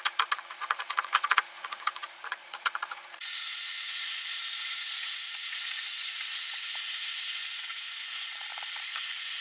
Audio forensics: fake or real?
fake